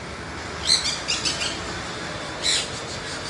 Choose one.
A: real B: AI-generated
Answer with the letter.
A